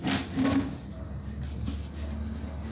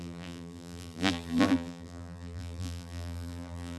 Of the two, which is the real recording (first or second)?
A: first